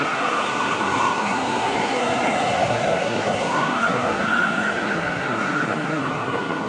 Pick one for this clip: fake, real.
fake